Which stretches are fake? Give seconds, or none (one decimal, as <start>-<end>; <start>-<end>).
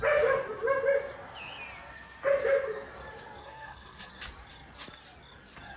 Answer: 3.4-4.1